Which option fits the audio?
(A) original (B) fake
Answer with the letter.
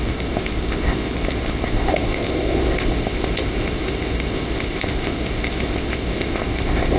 B